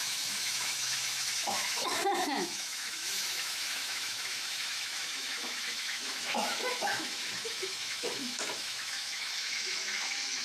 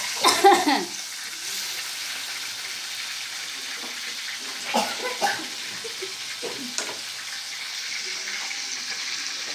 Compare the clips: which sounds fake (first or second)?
first